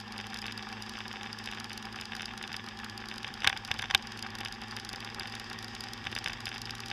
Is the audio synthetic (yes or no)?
no